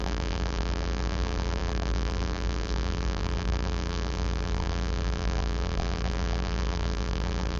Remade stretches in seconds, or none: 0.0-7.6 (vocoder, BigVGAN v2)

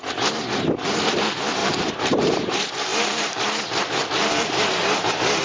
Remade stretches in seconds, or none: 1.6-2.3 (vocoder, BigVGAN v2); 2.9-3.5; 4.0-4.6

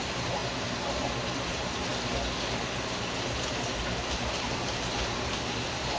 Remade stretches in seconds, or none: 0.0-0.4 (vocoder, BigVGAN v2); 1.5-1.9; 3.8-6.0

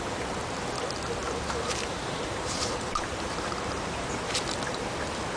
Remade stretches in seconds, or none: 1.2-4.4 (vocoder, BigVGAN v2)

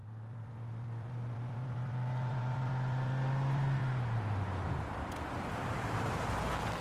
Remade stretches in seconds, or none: 0.0-2.7 (vocoder, BigVGAN v2)

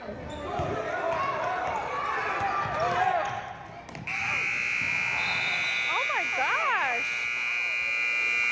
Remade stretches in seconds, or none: none